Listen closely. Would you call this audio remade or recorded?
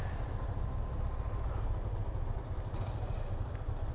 recorded